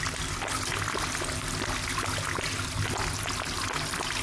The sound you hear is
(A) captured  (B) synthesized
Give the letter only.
A